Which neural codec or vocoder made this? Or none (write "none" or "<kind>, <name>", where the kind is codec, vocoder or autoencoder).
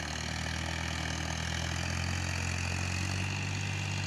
none